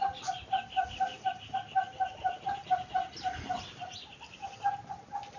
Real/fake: real